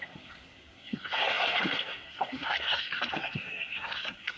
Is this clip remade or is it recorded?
remade